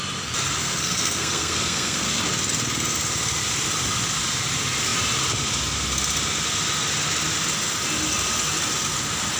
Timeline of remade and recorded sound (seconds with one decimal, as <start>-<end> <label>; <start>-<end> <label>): 0.0-0.6 recorded; 0.6-2.2 remade; 2.2-9.4 recorded